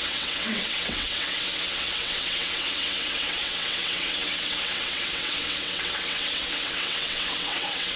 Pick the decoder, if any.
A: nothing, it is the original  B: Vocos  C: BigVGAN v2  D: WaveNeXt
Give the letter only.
D